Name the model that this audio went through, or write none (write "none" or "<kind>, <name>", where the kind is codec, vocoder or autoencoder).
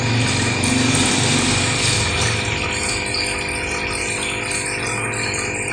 none